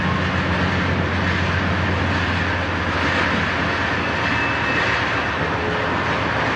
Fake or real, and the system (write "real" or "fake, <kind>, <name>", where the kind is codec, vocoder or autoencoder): real